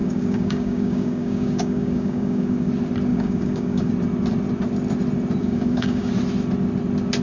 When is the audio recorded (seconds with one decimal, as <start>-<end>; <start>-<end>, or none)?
2.7-3.1; 3.9-5.4; 6.1-7.2